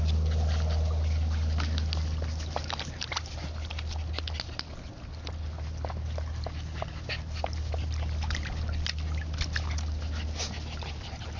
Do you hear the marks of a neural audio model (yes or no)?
no